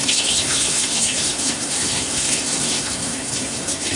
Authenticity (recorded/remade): remade